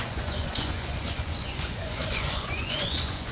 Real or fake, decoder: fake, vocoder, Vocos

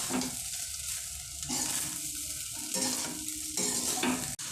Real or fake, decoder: real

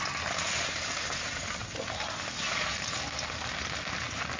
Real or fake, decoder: real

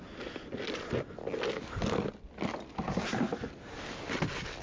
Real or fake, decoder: real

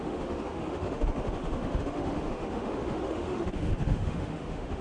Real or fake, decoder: fake, autoencoder, DAC-VAE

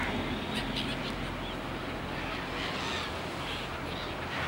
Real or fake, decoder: real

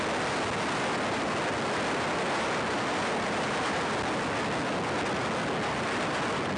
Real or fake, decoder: real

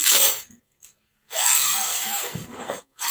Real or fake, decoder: fake, codec, SNAC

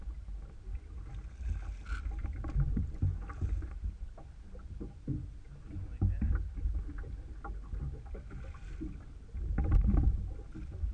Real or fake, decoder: real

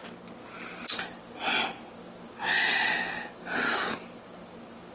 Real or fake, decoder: real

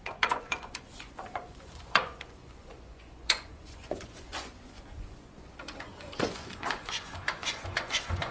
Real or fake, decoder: fake, vocoder, Vocos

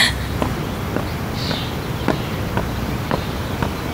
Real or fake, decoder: real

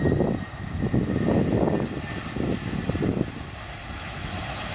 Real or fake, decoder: real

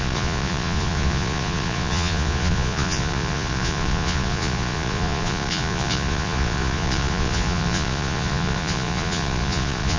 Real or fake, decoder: fake, vocoder, Vocos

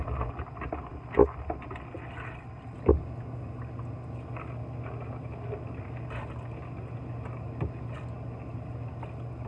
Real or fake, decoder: real